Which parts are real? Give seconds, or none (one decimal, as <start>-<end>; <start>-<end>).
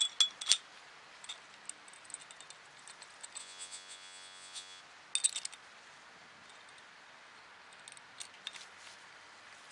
0.0-3.4; 4.8-9.7